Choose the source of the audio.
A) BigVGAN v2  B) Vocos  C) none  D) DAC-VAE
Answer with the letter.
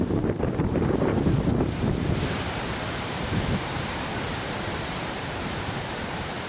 A